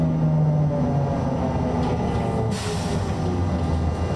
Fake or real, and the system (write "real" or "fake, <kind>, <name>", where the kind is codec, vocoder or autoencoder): real